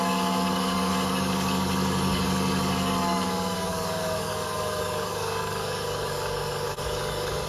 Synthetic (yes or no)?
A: yes